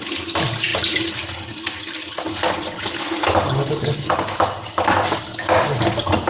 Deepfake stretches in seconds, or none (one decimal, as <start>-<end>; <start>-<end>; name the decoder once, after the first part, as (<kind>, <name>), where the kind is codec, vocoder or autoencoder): none